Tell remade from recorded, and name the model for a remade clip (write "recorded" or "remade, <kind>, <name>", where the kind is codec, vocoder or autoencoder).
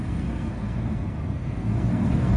remade, codec, SNAC